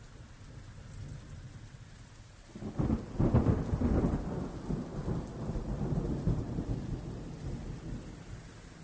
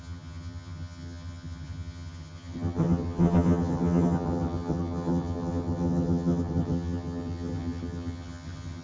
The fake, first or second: second